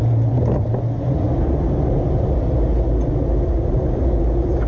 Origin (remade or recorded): recorded